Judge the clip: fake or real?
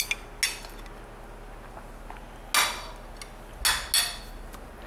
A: real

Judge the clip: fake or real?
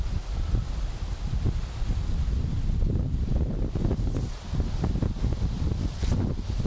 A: real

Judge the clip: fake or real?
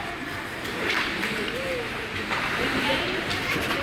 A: fake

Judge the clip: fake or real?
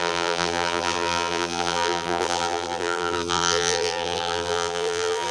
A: fake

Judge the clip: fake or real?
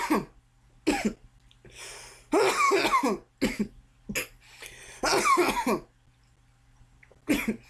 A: real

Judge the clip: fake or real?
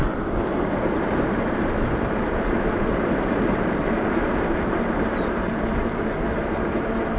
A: fake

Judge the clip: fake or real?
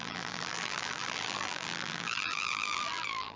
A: fake